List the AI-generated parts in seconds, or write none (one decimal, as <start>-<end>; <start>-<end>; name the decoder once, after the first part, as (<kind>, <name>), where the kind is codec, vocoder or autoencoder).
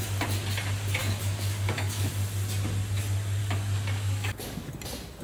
1.0-2.1 (codec, DAC); 3.4-4.7